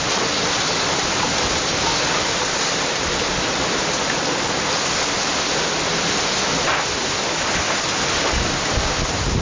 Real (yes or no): yes